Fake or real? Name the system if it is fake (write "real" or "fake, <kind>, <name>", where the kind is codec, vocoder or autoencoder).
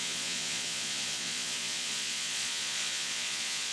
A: fake, vocoder, Vocos